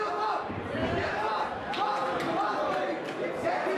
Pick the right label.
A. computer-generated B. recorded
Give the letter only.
A